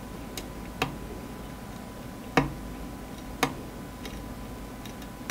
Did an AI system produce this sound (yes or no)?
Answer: no